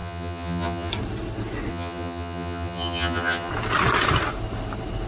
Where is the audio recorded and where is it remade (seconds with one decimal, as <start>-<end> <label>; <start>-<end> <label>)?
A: 0.0-0.9 remade; 0.9-1.7 recorded; 1.7-3.5 remade; 3.5-5.1 recorded